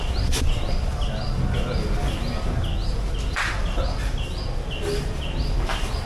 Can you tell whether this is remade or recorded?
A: recorded